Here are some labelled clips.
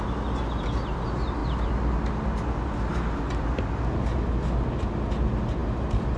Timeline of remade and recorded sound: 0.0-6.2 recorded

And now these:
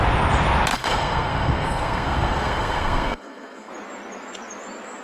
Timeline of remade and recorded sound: 0.0-0.7 recorded; 0.7-3.7 remade; 3.7-5.0 recorded